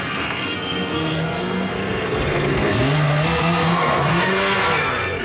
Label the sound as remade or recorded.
remade